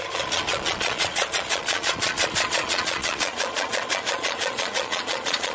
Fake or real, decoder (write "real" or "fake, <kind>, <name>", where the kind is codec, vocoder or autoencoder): fake, vocoder, Vocos